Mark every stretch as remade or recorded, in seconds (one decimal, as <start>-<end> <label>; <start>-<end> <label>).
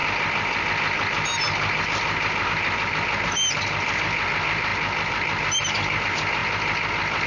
0.0-7.3 recorded